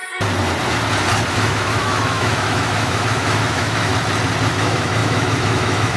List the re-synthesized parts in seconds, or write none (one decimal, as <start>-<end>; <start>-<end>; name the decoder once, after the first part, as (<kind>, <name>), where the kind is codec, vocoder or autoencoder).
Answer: 1.3-3.9 (autoencoder, DAC-VAE); 4.5-6.0